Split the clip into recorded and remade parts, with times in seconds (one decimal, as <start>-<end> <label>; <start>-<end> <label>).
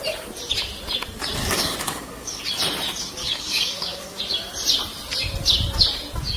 0.0-1.4 recorded; 1.4-2.4 remade; 2.4-3.2 recorded; 3.2-4.2 remade; 4.2-6.4 recorded